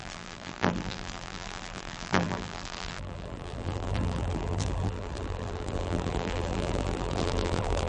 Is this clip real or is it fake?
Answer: fake